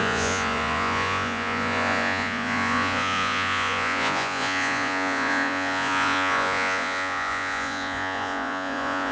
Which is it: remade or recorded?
remade